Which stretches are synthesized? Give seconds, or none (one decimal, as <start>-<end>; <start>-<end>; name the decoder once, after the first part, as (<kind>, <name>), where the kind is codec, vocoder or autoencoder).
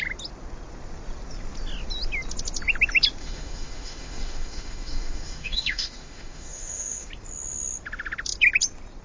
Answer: 3.2-7.1 (autoencoder, DAC-VAE)